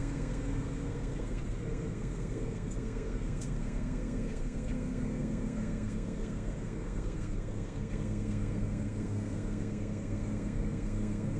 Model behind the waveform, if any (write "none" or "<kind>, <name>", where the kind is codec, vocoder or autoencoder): codec, SNAC